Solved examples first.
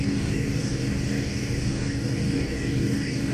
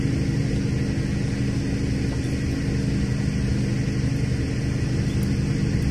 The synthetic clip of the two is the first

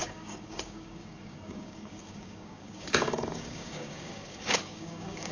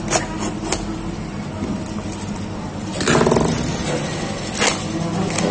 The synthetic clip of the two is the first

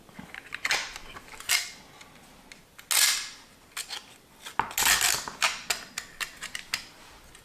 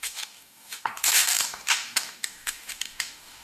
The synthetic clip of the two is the second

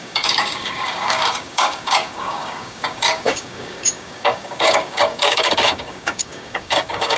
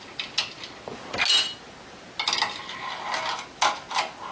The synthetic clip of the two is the first